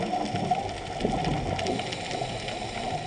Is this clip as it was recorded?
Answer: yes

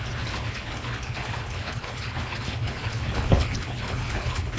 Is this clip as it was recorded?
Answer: no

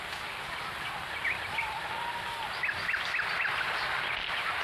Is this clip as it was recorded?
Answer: yes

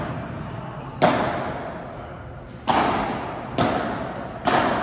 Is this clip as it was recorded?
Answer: yes